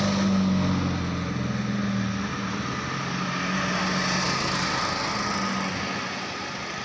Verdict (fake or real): real